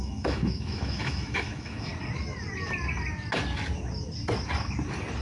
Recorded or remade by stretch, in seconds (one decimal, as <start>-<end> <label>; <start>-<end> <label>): 0.0-1.9 remade; 1.9-5.2 recorded